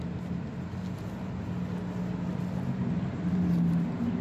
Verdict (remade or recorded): recorded